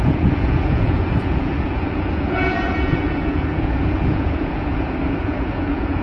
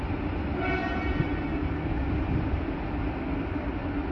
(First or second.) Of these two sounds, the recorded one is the second